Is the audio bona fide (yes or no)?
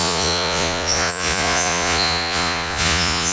no